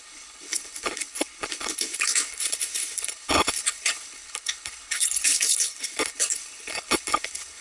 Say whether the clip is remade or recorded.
remade